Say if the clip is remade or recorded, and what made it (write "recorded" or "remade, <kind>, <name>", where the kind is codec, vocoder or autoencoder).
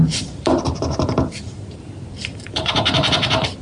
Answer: remade, vocoder, BigVGAN v2